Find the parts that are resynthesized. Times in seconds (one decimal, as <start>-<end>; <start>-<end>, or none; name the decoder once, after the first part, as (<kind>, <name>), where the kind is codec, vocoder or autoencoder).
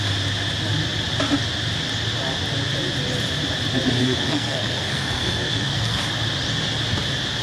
4.0-6.0 (codec, SNAC)